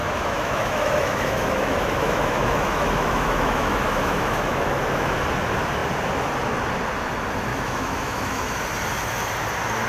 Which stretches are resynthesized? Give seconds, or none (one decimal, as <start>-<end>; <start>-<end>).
0.0-5.1; 7.5-8.6